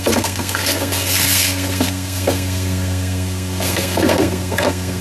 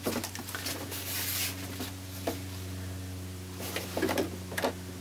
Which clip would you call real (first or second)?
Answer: second